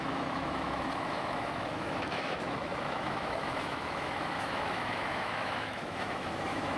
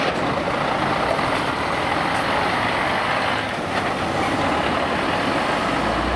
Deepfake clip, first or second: first